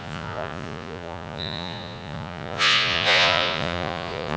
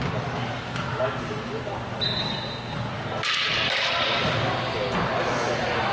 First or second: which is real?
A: second